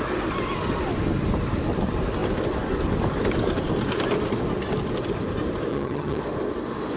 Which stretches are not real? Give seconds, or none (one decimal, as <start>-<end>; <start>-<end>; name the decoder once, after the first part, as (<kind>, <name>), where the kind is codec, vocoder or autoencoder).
5.7-6.2 (vocoder, HiFi-GAN)